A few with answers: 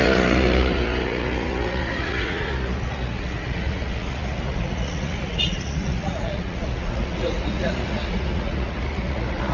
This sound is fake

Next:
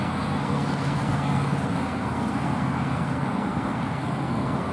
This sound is fake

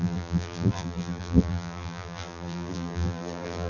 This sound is fake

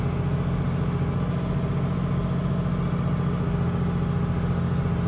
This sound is real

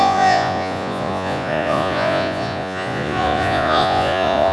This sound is fake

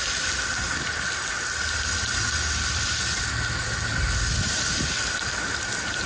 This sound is real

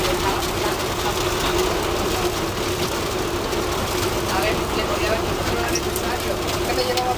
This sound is real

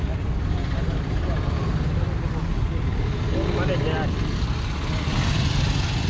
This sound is real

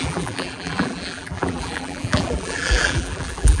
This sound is fake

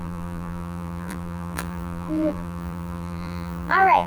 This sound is fake